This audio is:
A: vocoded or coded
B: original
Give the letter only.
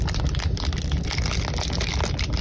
B